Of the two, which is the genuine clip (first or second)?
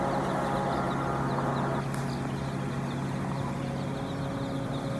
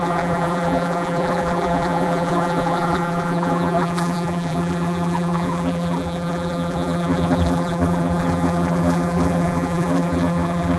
first